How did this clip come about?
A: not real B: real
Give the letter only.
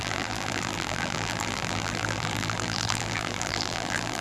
A